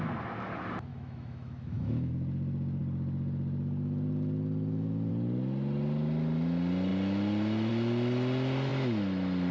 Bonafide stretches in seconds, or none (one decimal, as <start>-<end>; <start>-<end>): 0.0-0.9; 2.1-9.5